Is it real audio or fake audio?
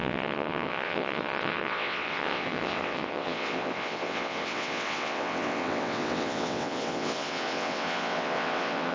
fake